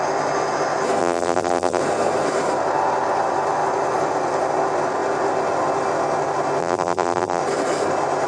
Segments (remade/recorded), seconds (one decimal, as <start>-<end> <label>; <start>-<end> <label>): 0.0-1.0 recorded; 1.0-1.8 remade; 1.8-6.6 recorded; 6.6-7.4 remade; 7.4-8.3 recorded